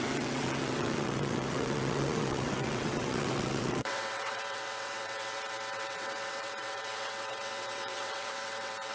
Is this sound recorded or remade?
remade